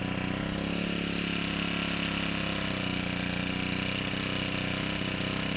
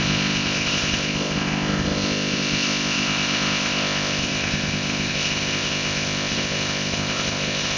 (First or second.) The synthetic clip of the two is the second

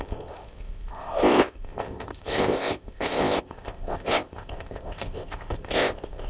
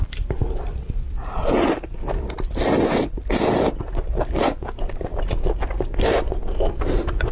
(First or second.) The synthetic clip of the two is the first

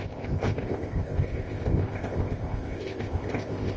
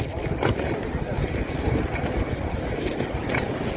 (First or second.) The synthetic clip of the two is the first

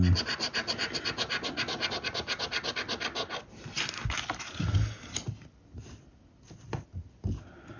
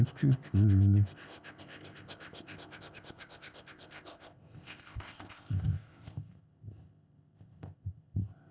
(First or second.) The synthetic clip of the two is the second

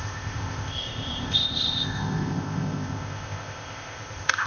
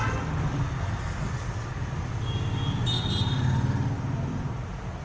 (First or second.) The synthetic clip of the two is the first